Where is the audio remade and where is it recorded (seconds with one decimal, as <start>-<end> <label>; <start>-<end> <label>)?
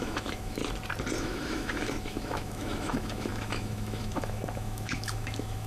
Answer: 0.0-0.6 remade; 0.6-1.2 recorded; 1.2-5.7 remade